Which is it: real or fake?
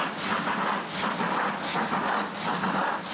real